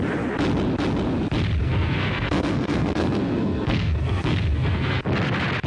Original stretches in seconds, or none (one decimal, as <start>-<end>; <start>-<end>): 0.0-1.6; 5.0-5.7